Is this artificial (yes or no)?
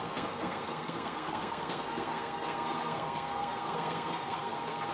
yes